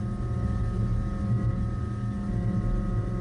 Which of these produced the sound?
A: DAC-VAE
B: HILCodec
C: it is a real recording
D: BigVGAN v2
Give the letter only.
C